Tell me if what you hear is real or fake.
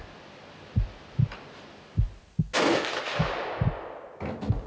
real